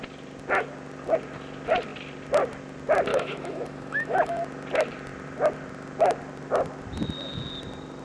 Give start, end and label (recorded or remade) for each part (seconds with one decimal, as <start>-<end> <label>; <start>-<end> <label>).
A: 0.0-3.1 recorded; 3.1-4.4 remade; 4.4-8.0 recorded